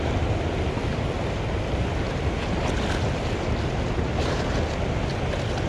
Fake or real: real